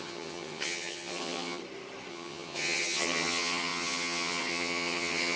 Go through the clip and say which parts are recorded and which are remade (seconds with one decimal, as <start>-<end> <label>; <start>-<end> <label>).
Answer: 0.0-1.6 remade; 1.6-2.1 recorded; 2.1-5.4 remade